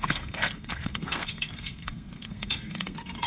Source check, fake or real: fake